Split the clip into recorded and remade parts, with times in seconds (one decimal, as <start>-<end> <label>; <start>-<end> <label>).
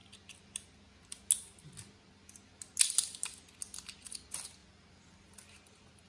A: 0.0-6.1 recorded